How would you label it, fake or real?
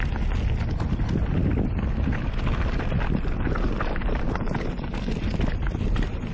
real